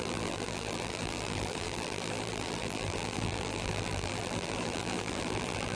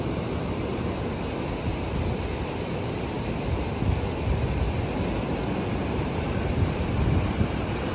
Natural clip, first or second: second